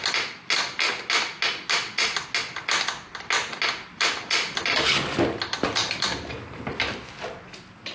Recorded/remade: recorded